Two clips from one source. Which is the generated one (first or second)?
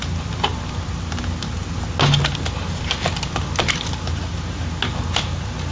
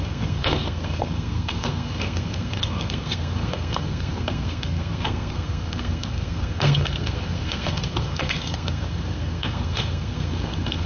second